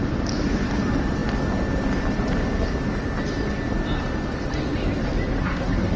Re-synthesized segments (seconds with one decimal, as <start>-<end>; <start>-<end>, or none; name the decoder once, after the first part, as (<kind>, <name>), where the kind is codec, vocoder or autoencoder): 5.4-6.0 (codec, SNAC)